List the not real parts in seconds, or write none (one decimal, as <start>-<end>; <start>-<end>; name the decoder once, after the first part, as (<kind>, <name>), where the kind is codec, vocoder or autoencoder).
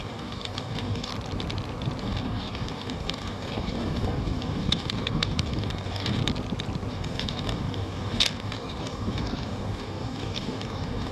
0.0-1.1 (codec, DAC); 2.0-6.2; 6.9-11.1